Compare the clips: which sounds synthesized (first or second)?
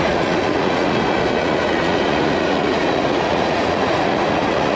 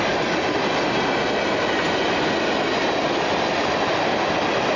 first